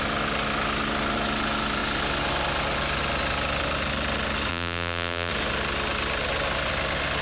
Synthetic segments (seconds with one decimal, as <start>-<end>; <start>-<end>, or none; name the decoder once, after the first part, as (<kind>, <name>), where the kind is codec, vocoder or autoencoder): 4.5-5.3 (vocoder, BigVGAN v2)